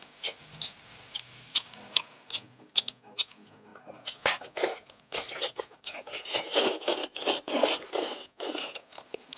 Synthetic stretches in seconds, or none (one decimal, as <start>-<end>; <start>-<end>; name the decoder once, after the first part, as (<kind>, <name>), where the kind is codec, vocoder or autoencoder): 7.0-7.9 (codec, DAC)